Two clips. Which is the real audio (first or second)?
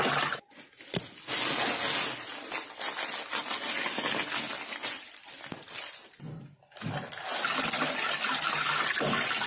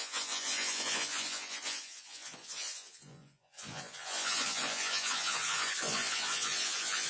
first